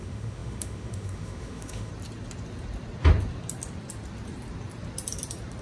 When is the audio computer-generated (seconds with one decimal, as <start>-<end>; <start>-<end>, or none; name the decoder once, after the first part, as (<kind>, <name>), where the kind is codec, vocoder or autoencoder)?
0.0-1.9 (autoencoder, DAC-VAE)